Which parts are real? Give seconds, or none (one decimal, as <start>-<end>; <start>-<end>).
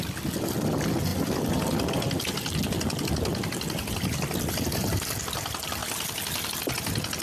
0.0-1.1; 1.9-3.3; 4.2-7.2